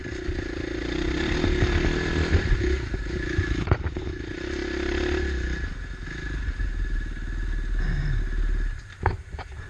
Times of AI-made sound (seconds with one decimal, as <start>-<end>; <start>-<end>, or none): none